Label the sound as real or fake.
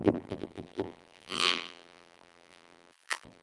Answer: fake